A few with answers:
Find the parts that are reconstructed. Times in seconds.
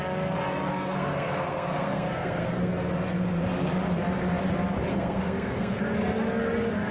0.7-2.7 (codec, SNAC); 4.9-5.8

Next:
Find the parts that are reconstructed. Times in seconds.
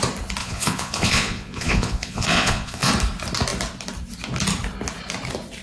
0.4-2.9 (vocoder, Vocos)